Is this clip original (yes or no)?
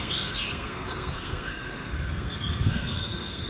no